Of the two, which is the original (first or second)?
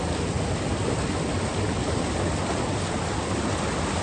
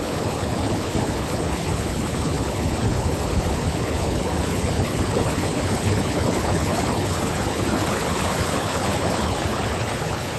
first